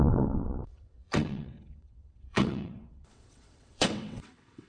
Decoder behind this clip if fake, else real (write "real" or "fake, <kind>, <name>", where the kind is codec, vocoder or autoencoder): fake, vocoder, WaveNeXt